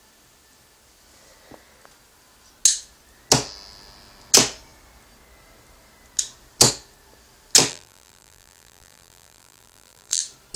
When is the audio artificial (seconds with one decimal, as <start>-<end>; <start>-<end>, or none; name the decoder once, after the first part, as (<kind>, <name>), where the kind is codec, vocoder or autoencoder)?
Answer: 7.7-10.2 (vocoder, BigVGAN v2)